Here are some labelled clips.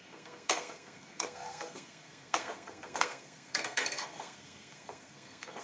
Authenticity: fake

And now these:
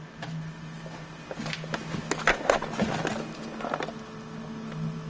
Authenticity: real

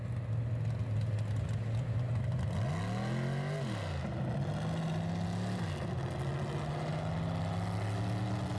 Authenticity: real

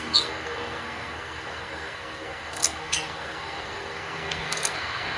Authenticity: fake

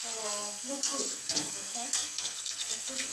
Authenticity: fake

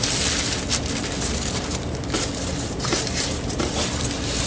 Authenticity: real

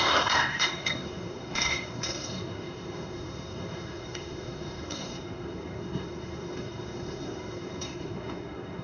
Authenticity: fake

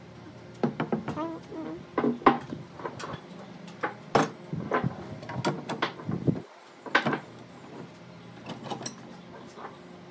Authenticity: real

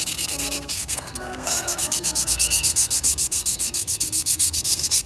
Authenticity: fake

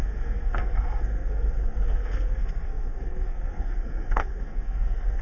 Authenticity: fake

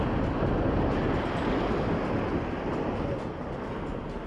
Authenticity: real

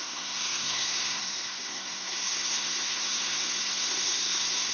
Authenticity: fake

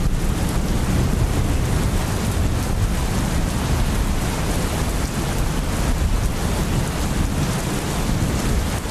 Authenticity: real